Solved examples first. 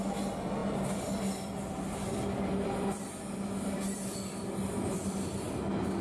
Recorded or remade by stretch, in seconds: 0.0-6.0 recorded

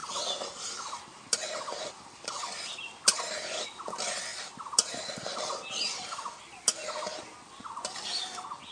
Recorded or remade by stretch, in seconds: 0.0-8.7 recorded